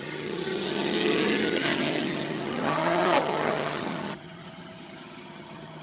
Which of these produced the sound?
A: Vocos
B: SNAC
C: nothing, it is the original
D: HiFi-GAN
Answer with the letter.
D